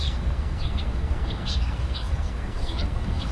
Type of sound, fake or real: fake